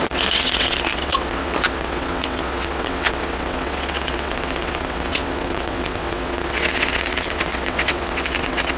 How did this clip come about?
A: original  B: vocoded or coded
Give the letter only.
B